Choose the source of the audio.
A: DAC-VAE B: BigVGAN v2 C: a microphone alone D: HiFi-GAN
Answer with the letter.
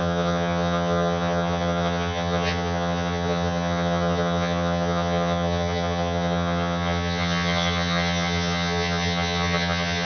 D